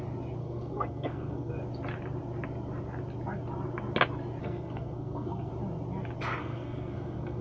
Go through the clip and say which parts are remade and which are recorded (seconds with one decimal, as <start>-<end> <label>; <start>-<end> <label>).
0.0-0.4 recorded; 0.4-1.5 remade; 1.5-4.4 recorded; 4.4-5.5 remade; 5.5-6.4 recorded; 6.4-7.4 remade